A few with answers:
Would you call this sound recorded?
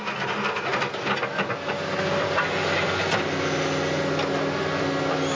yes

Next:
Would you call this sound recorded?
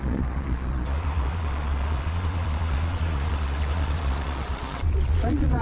no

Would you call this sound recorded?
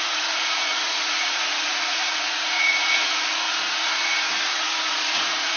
no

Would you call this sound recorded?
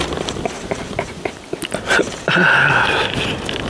yes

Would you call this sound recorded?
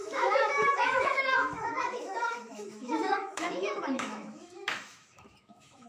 no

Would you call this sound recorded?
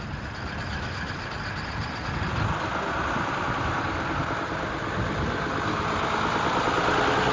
yes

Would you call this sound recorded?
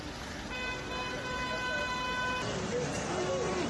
yes